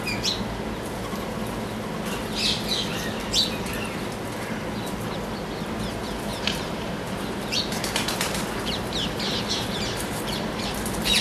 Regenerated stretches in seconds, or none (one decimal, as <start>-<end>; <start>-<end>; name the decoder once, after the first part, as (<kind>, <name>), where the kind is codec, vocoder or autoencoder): 2.9-3.7 (vocoder, BigVGAN v2); 6.3-11.2